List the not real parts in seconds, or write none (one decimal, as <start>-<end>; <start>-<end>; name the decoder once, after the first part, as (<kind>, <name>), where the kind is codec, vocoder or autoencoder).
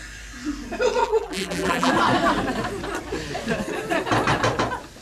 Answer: 1.0-1.9 (vocoder, BigVGAN v2)